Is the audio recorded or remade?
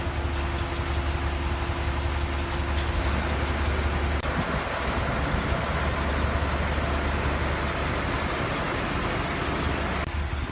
recorded